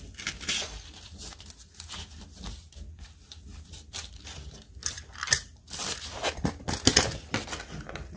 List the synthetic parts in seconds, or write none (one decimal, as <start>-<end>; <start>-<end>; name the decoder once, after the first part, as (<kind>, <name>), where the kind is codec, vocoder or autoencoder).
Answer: none